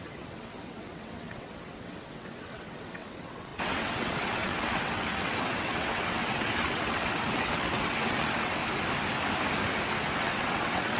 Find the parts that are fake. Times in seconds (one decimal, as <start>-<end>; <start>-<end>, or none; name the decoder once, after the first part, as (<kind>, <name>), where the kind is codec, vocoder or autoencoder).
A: 0.0-8.6 (vocoder, WaveNeXt); 10.2-11.0